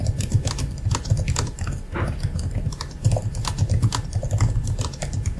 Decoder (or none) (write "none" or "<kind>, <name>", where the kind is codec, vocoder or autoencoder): none